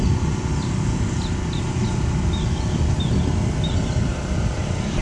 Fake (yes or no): no